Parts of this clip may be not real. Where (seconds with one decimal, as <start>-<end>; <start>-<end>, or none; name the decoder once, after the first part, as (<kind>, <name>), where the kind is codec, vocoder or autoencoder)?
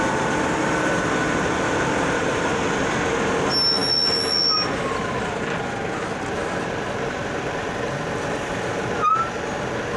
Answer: none